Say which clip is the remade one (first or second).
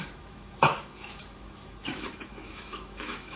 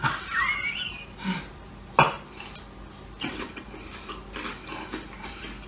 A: first